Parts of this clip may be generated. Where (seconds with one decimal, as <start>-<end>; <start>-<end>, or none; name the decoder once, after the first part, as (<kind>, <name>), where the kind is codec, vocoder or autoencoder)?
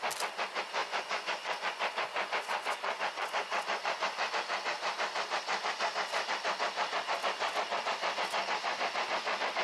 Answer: 0.8-4.3 (vocoder, Vocos)